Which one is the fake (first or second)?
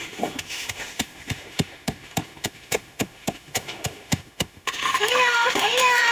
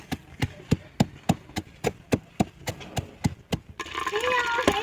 first